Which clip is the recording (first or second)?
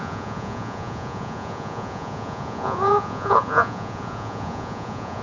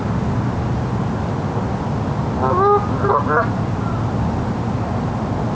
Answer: second